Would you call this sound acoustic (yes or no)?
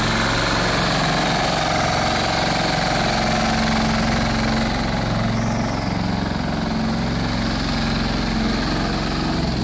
yes